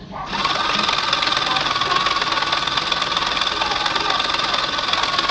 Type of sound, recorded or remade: recorded